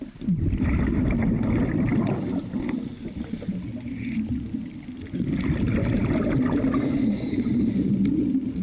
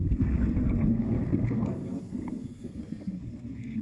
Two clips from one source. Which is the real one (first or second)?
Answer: first